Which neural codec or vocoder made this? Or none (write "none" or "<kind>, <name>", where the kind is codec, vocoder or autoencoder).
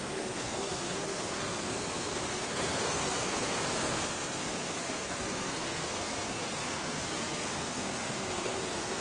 codec, SNAC